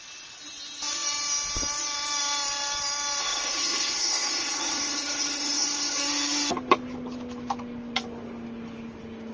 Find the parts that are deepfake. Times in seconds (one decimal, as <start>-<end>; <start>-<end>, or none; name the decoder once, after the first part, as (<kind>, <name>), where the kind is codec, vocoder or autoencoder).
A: 3.2-6.0 (codec, HILCodec)